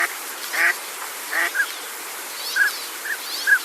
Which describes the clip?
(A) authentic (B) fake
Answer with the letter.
A